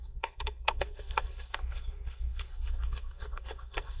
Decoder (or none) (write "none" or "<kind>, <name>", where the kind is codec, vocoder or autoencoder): codec, SNAC